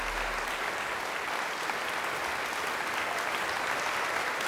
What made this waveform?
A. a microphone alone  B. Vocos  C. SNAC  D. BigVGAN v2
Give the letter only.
A